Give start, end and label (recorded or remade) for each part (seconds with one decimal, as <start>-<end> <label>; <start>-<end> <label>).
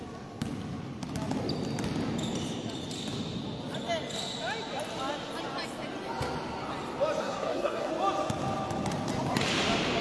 0.0-7.2 recorded; 7.2-7.9 remade; 7.9-10.0 recorded